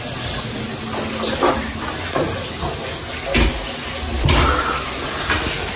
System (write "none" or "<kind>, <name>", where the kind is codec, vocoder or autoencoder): none